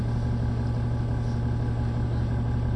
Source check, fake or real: real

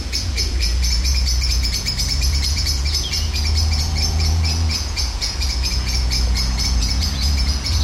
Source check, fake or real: fake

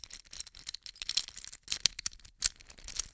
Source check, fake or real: real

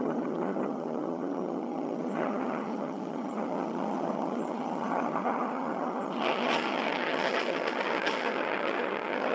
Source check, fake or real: fake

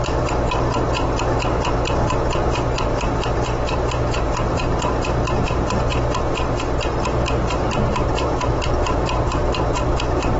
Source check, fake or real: fake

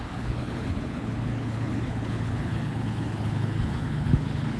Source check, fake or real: fake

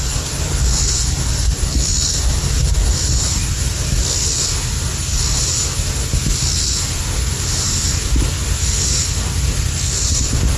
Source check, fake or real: real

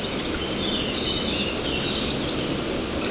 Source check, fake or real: real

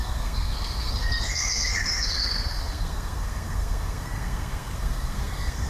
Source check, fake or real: fake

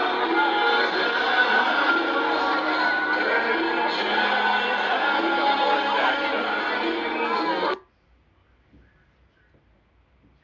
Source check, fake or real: real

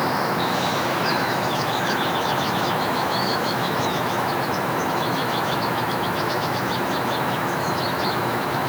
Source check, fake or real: fake